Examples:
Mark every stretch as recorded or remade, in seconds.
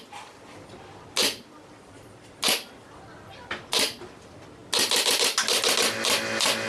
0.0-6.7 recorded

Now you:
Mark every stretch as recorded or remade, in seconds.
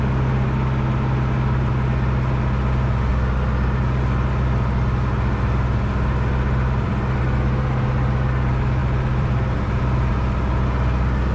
0.0-3.1 recorded; 3.1-7.2 remade; 7.2-8.8 recorded; 8.8-10.1 remade; 10.1-11.3 recorded